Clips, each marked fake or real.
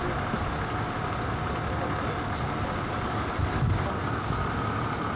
real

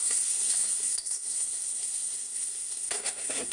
fake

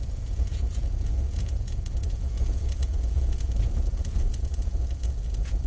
fake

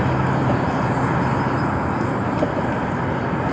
real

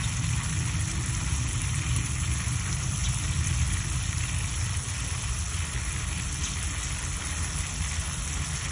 real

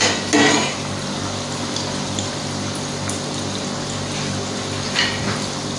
real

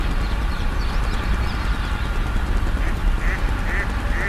real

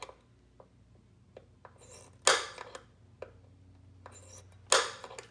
real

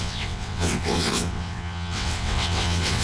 fake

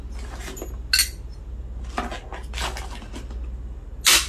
real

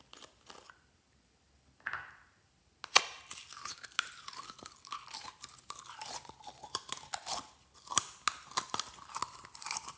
real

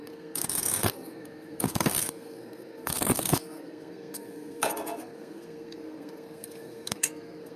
fake